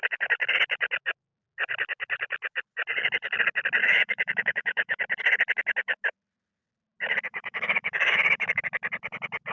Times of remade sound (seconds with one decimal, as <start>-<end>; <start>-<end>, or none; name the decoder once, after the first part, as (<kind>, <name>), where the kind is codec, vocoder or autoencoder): 3.8-5.0 (autoencoder, DAC-VAE); 7.3-8.6